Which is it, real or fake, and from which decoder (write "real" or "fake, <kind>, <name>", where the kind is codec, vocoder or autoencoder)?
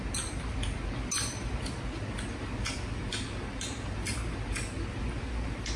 real